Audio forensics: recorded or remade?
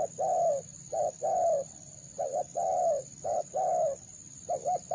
recorded